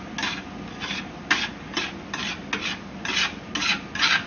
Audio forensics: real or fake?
real